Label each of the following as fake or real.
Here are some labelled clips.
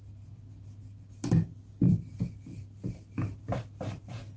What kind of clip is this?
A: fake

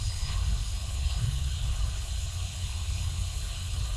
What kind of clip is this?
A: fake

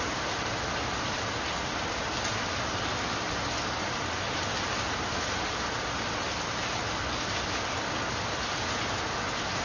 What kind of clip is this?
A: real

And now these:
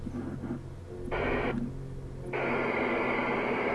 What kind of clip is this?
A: real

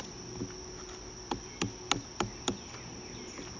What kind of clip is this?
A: real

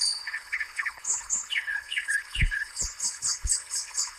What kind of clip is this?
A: fake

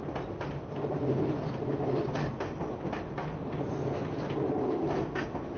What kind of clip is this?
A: real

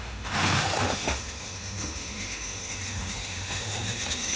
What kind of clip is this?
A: fake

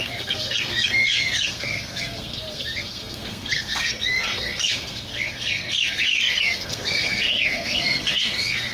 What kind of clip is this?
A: fake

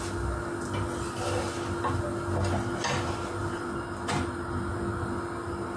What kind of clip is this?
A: real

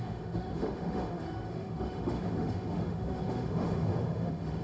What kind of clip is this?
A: fake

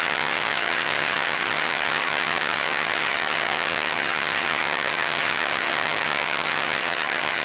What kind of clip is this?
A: fake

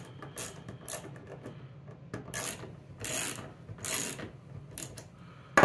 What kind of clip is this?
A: real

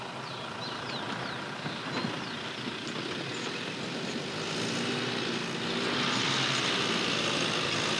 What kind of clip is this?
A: real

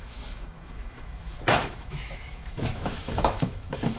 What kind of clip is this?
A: fake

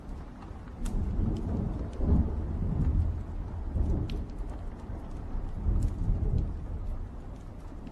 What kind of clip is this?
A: real